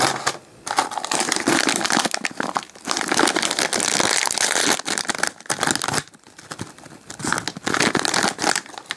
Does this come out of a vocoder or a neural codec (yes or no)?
no